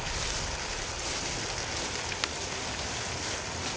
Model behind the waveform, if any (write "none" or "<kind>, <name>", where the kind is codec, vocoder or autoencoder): none